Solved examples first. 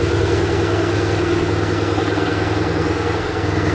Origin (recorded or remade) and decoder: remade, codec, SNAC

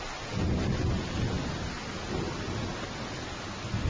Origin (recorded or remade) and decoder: recorded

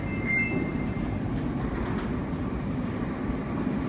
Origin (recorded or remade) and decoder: recorded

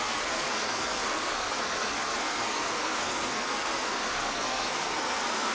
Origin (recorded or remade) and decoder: remade, codec, SNAC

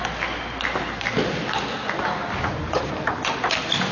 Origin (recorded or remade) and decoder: recorded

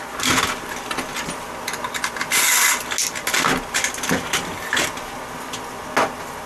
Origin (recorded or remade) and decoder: recorded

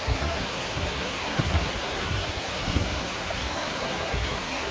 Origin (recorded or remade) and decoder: remade, codec, SNAC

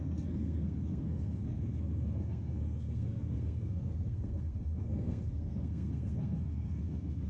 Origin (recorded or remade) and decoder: remade, codec, SNAC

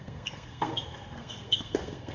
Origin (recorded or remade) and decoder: remade, codec, SNAC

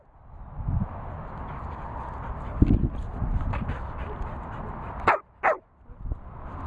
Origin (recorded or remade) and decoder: recorded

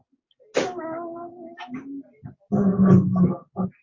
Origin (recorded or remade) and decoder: recorded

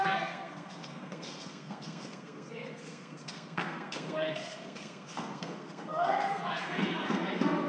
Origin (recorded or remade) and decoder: remade, codec, SNAC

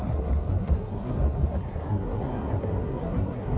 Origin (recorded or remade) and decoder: remade, codec, SNAC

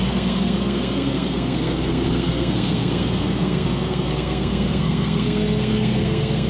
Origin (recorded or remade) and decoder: remade, codec, SNAC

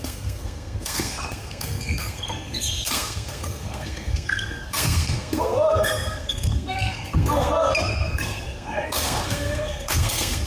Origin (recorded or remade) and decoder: remade, codec, SNAC